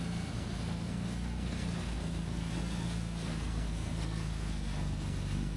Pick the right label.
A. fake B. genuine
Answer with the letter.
A